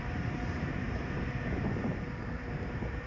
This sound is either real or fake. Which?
fake